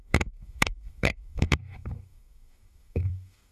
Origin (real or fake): fake